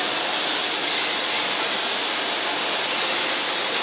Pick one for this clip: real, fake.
real